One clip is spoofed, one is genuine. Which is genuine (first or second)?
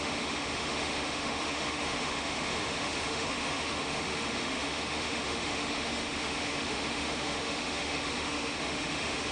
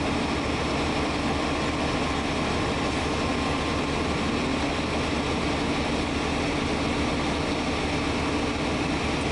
second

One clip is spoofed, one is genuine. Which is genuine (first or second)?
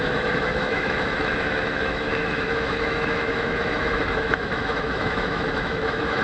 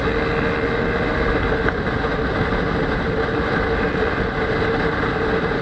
second